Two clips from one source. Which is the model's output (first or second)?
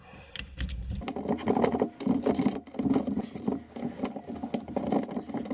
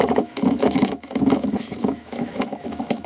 second